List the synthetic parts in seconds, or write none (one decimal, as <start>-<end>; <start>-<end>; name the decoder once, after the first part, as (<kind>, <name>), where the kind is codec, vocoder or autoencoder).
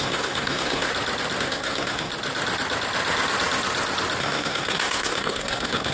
0.0-0.9 (codec, SNAC); 1.4-2.1; 4.2-5.9